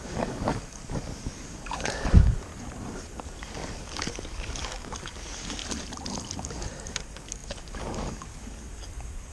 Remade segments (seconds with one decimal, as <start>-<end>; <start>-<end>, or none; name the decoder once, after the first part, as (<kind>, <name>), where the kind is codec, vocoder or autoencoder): 0.0-2.5 (codec, DAC); 3.1-5.6; 6.4-9.3